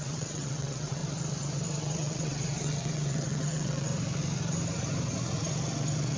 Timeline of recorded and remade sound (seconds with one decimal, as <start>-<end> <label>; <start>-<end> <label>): 0.0-1.0 remade; 1.0-1.8 recorded; 1.8-3.9 remade; 3.9-6.2 recorded